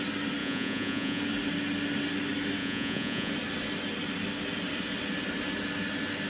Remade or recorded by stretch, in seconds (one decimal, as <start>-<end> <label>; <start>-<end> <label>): 0.0-0.4 recorded; 0.4-1.2 remade; 1.2-2.6 recorded; 2.6-3.3 remade; 3.3-6.3 recorded